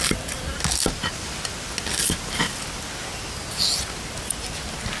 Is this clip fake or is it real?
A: real